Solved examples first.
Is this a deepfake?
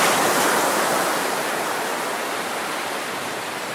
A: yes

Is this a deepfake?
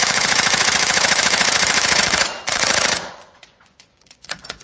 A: yes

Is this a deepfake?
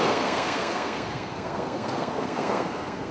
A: yes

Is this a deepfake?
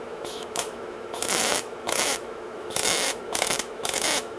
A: yes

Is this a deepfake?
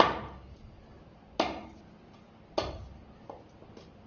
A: no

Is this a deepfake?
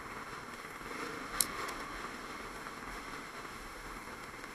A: yes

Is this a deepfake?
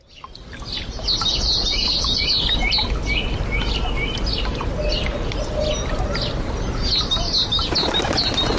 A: no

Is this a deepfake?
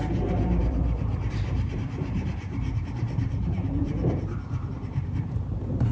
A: yes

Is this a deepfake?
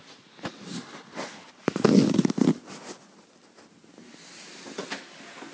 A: no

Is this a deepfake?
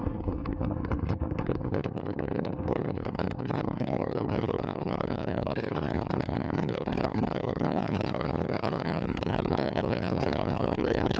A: yes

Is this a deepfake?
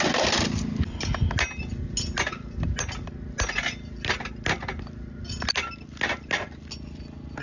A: no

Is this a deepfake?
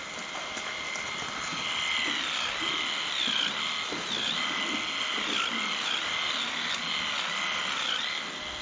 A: no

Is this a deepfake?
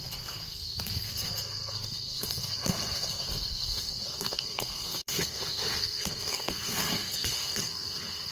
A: yes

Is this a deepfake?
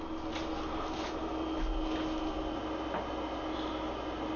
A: no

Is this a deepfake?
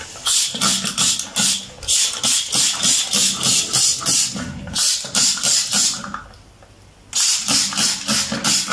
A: no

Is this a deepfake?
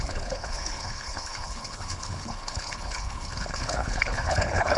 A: yes